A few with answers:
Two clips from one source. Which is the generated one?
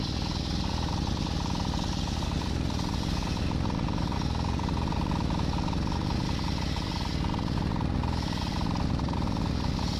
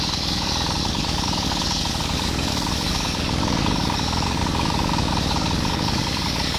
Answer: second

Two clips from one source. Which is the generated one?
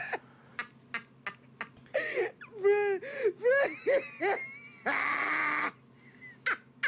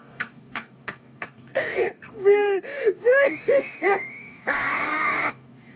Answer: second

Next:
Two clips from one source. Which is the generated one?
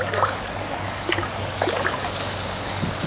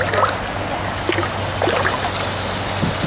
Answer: first